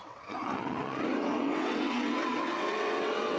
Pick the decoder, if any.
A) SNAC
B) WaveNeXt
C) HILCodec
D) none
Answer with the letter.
B